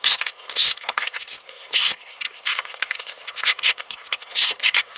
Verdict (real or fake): fake